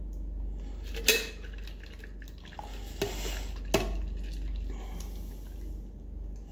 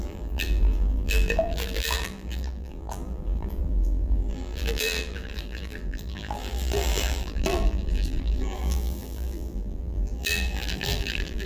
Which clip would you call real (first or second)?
first